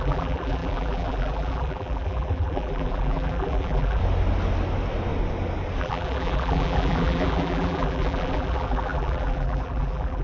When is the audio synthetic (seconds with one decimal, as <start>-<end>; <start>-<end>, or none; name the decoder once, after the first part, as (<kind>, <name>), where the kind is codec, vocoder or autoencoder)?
0.0-4.0 (vocoder, BigVGAN v2); 5.8-10.2